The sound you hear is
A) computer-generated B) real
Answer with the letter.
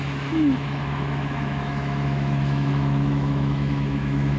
A